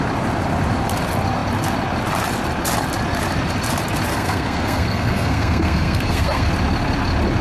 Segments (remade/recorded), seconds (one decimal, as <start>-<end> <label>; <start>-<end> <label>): 0.0-4.1 recorded; 4.1-6.5 remade; 6.5-7.4 recorded